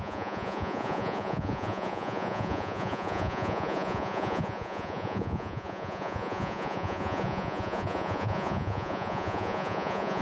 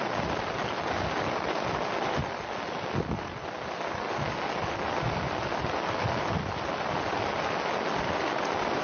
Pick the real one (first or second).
second